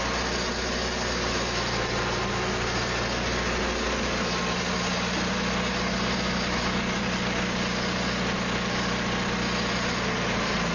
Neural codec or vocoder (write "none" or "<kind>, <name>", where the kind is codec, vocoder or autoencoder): none